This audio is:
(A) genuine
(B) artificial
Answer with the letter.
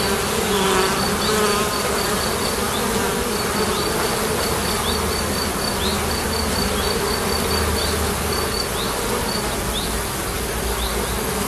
A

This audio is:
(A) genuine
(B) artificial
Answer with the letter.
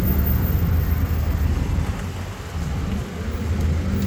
A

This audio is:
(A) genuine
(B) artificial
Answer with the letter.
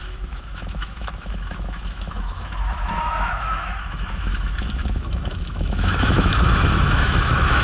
B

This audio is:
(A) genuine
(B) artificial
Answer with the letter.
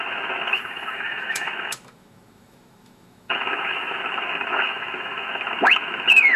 B